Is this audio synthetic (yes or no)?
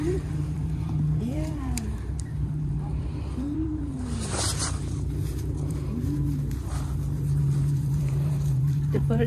yes